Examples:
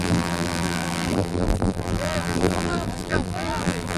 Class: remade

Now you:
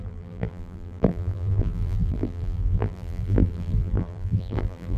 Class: remade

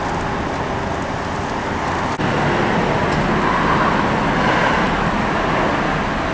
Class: recorded